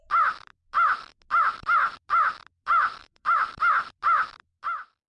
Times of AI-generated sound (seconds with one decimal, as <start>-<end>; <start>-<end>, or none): 3.0-3.6

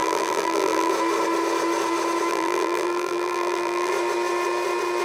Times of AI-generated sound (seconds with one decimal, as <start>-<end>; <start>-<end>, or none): 0.0-0.9; 2.3-3.9